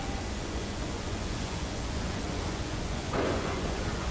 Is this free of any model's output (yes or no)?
no